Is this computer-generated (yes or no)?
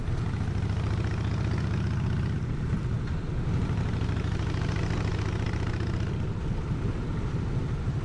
no